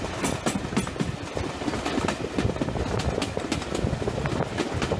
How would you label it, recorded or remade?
recorded